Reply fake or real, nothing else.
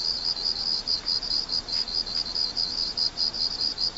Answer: real